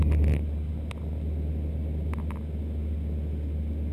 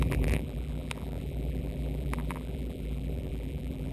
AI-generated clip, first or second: second